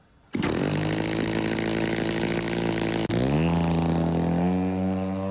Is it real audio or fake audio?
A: real